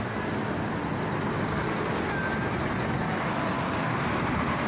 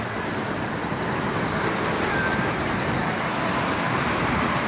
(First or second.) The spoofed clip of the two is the second